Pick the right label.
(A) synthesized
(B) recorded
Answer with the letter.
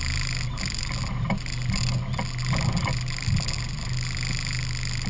B